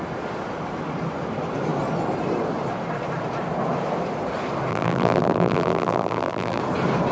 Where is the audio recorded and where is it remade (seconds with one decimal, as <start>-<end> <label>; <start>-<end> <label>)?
0.0-4.7 recorded; 4.7-6.6 remade; 6.6-7.1 recorded